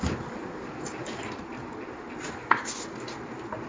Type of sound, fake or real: real